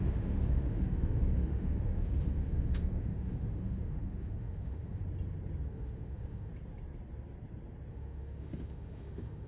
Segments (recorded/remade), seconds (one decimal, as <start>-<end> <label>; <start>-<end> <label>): 0.0-5.0 remade; 5.0-5.7 recorded; 5.7-6.5 remade; 6.5-7.9 recorded; 7.9-9.5 remade